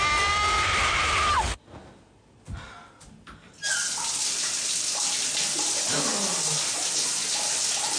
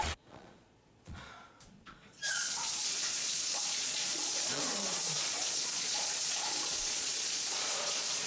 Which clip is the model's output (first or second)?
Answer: second